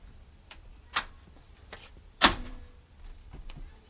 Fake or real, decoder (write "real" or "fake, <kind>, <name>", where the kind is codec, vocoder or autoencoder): fake, vocoder, BigVGAN v2